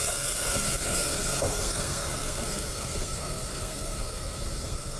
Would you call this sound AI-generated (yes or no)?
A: yes